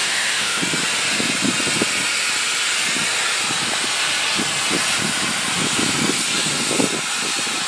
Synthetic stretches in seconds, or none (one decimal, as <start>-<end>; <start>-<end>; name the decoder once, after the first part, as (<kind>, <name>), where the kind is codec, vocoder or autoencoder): 0.0-0.6 (autoencoder, DAC-VAE)